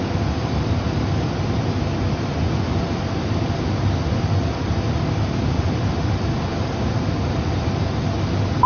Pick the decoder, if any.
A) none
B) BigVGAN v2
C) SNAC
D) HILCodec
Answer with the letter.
A